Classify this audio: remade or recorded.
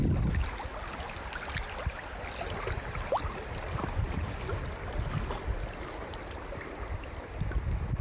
recorded